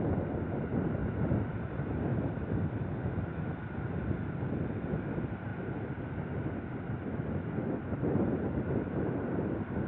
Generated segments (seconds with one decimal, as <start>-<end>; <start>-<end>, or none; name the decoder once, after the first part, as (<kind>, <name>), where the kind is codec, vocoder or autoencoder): none